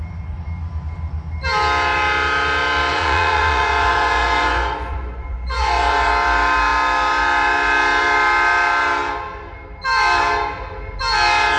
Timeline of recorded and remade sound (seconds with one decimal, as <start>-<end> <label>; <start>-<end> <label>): 0.0-2.9 recorded; 2.9-6.1 remade; 6.1-11.6 recorded